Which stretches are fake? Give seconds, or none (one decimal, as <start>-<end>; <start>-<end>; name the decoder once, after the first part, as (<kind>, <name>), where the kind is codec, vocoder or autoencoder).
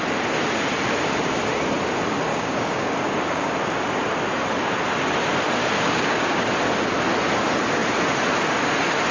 2.3-3.5 (codec, DAC); 5.6-6.5